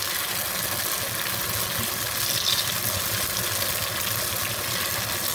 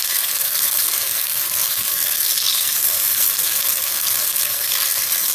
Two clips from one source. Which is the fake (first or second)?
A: second